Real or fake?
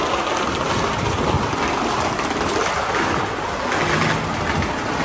real